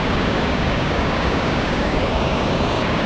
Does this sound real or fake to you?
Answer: fake